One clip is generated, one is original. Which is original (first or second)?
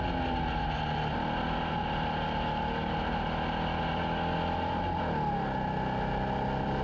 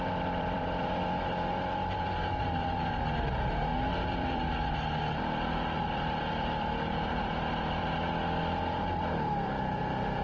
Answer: first